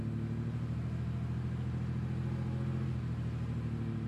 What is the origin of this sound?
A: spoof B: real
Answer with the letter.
B